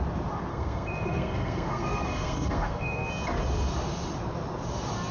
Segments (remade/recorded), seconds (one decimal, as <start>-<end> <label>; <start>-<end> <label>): 0.0-0.5 recorded; 0.5-3.1 remade; 3.1-5.1 recorded